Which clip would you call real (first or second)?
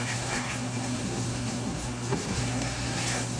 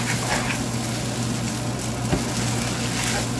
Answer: second